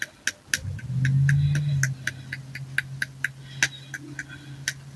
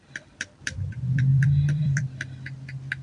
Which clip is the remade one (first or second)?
second